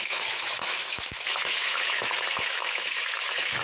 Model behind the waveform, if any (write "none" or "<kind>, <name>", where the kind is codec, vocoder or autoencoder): autoencoder, DAC-VAE